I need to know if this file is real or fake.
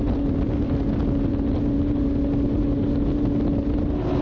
real